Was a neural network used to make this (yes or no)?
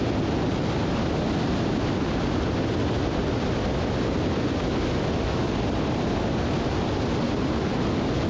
no